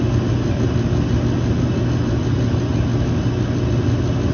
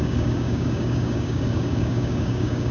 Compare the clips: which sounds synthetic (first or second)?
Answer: second